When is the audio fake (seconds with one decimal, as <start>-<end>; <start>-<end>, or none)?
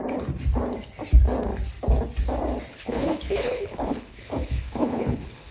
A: 2.7-5.5